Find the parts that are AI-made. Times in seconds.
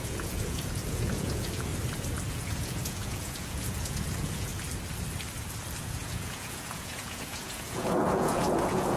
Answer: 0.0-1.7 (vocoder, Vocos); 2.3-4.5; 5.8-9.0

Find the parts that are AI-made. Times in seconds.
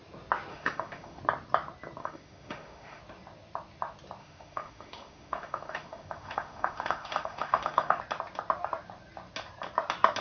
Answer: 0.5-1.2 (autoencoder, DAC-VAE); 2.0-3.0; 4.2-8.0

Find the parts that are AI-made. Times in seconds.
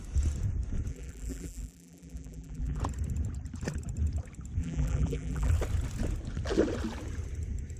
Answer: 0.9-2.8 (vocoder, BigVGAN v2); 4.6-5.5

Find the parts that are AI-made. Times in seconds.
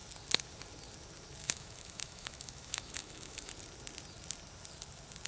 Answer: 1.4-3.5 (autoencoder, DAC-VAE)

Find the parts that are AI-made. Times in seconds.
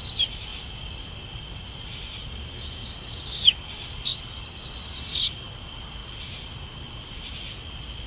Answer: none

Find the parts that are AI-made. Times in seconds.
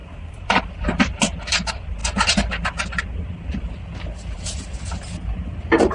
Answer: 0.0-0.6 (vocoder, BigVGAN v2)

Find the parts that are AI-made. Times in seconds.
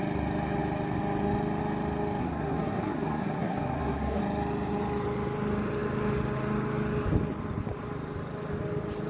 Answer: 2.2-4.2 (codec, SNAC)